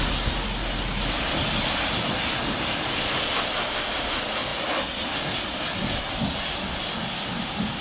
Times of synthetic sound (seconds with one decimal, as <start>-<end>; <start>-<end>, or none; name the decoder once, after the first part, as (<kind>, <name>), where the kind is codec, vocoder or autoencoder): none